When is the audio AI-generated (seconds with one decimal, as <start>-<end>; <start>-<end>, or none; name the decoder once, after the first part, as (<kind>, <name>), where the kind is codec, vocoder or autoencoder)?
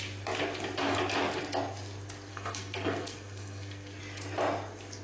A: 2.3-4.0 (codec, SNAC)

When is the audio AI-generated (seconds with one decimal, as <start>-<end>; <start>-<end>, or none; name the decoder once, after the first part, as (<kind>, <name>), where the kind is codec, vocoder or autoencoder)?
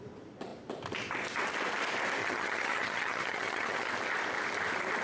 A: 2.2-3.9 (vocoder, HiFi-GAN)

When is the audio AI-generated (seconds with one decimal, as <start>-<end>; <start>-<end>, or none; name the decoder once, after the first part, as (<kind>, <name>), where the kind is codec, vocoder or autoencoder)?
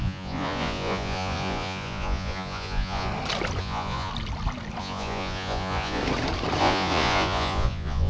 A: 0.0-3.1 (vocoder, Vocos); 3.6-4.1; 4.8-6.0; 6.6-8.1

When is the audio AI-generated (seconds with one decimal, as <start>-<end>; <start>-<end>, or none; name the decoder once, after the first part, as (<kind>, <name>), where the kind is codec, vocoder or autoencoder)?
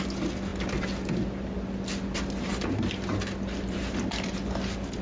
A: none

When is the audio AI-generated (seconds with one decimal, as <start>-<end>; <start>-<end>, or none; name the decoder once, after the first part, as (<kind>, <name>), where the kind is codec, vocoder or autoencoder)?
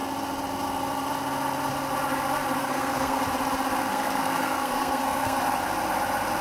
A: 2.6-3.2 (codec, SNAC); 3.9-5.4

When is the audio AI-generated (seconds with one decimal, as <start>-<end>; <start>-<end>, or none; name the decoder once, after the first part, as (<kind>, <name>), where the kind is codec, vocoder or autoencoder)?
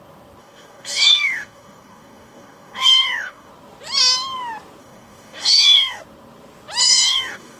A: 0.4-3.5 (codec, DAC); 4.8-6.0; 6.8-7.6